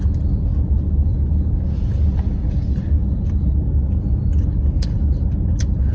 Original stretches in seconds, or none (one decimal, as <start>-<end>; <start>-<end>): 0.0-5.9